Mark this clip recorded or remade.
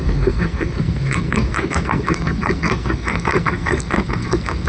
remade